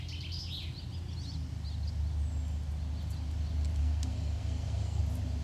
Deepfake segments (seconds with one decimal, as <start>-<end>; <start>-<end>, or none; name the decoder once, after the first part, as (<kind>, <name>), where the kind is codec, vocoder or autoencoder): 3.8-5.0 (codec, SNAC)